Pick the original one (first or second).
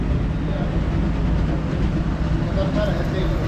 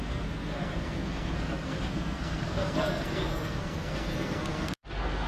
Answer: first